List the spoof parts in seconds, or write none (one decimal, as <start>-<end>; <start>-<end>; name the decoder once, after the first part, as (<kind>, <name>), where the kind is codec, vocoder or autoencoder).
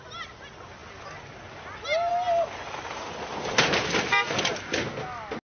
none